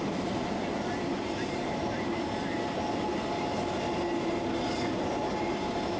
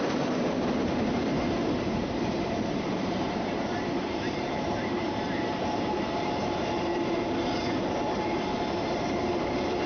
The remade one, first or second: second